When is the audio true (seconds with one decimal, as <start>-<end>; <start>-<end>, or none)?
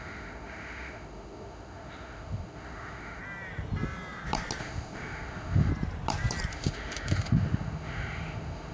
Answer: 3.2-4.6; 5.7-6.5